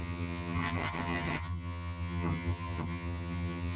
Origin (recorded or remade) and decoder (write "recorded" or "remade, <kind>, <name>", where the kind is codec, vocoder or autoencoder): remade, vocoder, HiFi-GAN